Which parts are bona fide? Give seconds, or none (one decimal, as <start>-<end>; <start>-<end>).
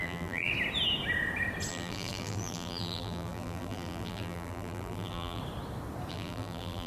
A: 0.5-1.7; 5.4-6.1